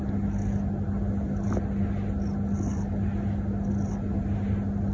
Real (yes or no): yes